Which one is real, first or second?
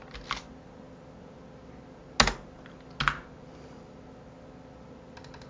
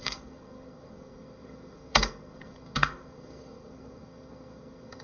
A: first